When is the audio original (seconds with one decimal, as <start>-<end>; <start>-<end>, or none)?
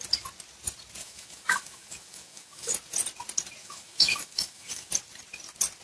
0.0-1.0; 2.7-3.6; 4.9-5.8